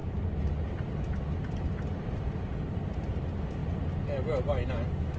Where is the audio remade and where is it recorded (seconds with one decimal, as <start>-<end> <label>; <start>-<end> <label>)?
0.0-5.2 recorded